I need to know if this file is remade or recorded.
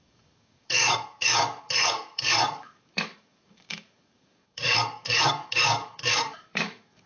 remade